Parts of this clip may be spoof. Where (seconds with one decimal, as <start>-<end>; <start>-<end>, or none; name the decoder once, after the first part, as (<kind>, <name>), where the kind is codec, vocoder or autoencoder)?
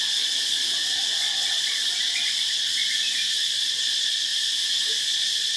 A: 0.0-2.8 (vocoder, Vocos); 3.5-4.3; 5.1-5.6